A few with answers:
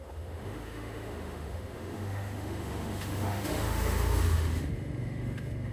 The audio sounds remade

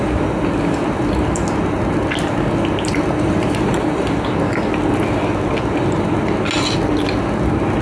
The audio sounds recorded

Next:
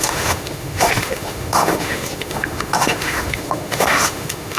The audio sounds remade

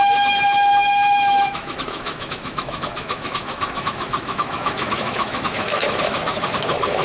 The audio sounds remade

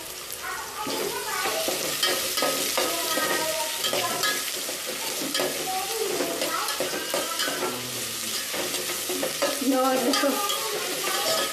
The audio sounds recorded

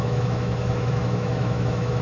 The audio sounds remade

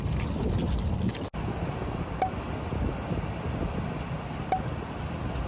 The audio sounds recorded